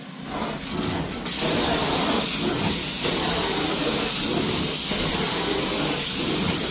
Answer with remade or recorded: recorded